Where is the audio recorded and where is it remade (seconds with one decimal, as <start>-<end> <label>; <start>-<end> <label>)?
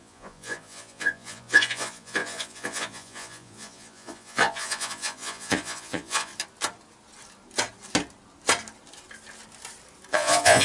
0.0-6.3 remade; 6.3-10.1 recorded; 10.1-10.6 remade